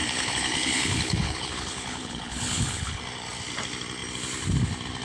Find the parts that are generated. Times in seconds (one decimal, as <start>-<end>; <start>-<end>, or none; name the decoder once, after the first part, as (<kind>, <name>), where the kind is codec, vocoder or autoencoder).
0.0-3.0 (codec, HILCodec)